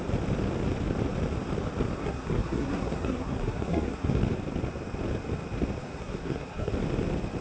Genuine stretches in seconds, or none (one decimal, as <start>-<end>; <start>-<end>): 0.0-2.0; 4.2-5.8; 6.7-7.4